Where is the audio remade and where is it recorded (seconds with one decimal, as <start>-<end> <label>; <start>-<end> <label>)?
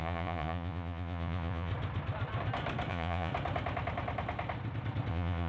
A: 0.0-1.7 remade; 1.7-2.9 recorded; 2.9-3.3 remade; 3.3-5.1 recorded; 5.1-5.5 remade